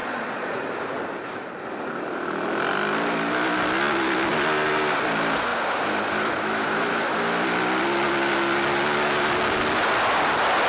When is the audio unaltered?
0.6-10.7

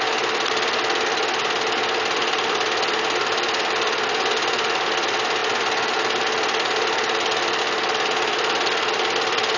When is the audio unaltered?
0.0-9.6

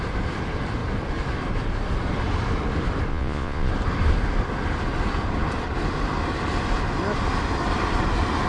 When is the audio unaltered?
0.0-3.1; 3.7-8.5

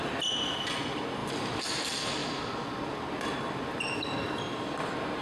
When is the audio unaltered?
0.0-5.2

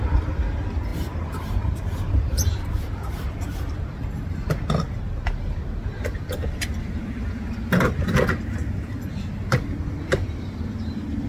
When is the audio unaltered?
0.0-0.9; 4.4-11.3

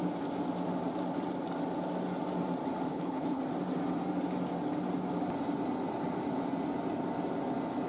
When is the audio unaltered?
0.0-2.9; 3.4-7.9

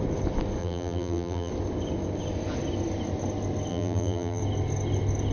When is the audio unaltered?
0.0-0.6; 1.5-3.7; 4.4-5.3